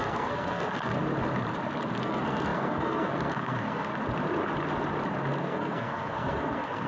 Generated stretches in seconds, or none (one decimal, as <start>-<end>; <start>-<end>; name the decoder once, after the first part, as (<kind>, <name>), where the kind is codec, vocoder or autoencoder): 0.0-0.9 (codec, SNAC); 2.0-3.9; 5.4-6.9